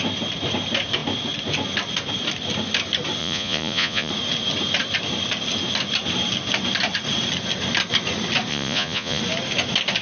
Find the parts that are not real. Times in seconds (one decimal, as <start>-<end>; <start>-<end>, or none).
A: 3.2-4.1; 8.5-9.2